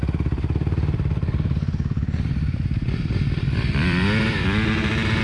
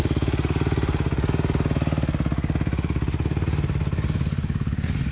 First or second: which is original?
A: second